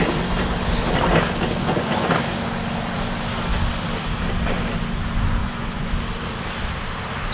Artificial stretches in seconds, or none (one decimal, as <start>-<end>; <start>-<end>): 1.6-2.1; 5.4-5.9